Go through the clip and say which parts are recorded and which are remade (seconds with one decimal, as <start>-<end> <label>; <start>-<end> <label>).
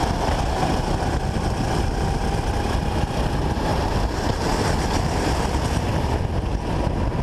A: 0.0-3.7 recorded; 3.7-5.9 remade; 5.9-7.2 recorded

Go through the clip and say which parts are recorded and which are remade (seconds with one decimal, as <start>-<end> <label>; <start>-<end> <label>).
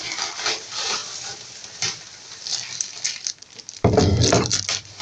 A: 0.0-5.0 recorded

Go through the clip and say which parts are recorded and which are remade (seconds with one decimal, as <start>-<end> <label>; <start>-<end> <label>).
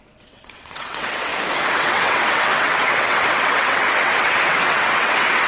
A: 0.0-1.3 remade; 1.3-1.8 recorded; 1.8-5.5 remade